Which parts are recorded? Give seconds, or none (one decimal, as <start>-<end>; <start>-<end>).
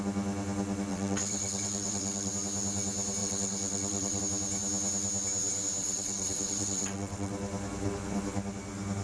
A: 0.0-0.9; 2.3-3.2; 4.2-5.8; 7.3-9.0